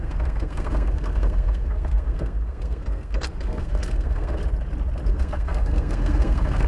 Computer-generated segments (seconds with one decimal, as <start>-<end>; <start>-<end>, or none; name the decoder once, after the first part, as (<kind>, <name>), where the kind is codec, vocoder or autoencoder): 0.0-4.4 (codec, SNAC); 5.1-6.7